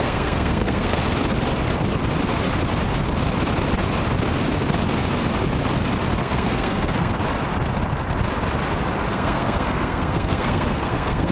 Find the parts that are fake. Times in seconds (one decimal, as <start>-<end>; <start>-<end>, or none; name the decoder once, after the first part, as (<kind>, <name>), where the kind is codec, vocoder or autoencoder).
0.0-1.0 (codec, SNAC); 6.2-7.2; 9.1-11.3